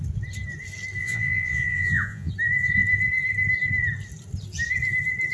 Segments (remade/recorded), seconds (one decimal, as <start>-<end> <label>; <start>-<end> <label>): 0.0-1.0 recorded; 1.0-2.3 remade; 2.3-5.3 recorded